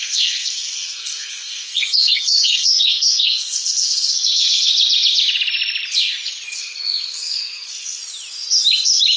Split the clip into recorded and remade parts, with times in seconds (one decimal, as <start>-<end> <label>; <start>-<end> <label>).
0.0-4.7 remade; 4.7-6.6 recorded; 6.6-8.0 remade; 8.0-9.2 recorded